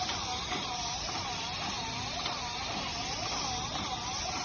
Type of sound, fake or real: real